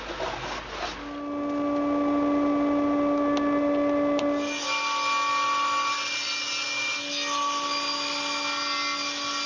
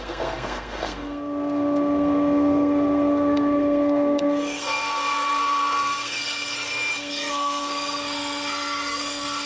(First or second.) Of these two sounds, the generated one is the second